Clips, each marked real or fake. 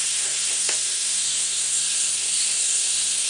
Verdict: fake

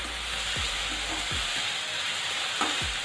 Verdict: real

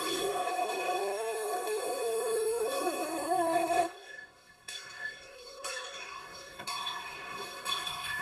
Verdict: fake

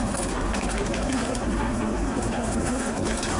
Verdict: fake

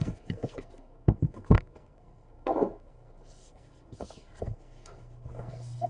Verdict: fake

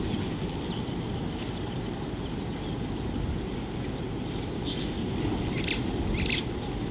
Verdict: real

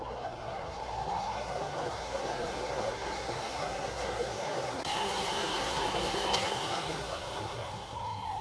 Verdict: fake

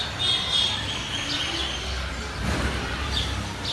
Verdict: real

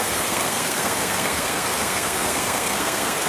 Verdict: fake